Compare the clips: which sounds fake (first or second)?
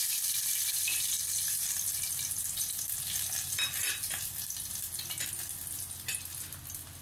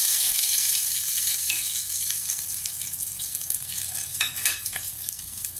second